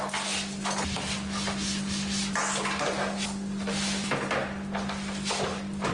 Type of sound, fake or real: real